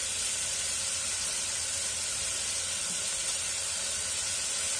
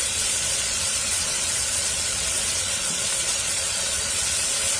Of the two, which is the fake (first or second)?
second